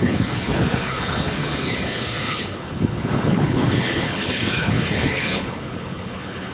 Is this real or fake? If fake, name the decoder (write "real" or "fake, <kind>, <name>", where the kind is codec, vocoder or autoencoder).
fake, codec, HILCodec